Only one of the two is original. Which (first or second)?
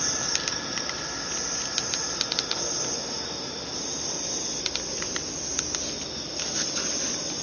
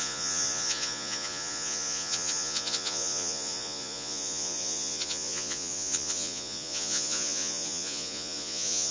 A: first